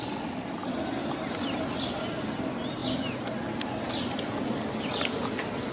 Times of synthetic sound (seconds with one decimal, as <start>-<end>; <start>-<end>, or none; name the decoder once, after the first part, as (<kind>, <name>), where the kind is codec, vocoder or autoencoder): none